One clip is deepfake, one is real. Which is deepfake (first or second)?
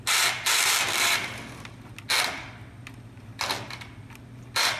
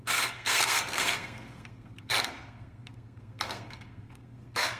second